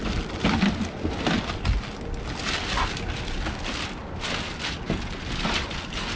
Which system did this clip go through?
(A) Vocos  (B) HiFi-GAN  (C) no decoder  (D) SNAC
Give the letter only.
C